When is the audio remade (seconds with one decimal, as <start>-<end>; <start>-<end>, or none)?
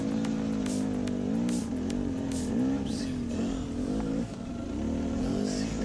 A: 3.8-4.5